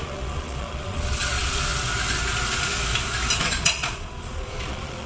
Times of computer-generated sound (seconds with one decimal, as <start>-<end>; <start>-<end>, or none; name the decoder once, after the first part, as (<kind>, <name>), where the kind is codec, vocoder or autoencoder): 0.0-1.7 (vocoder, Vocos); 3.4-5.1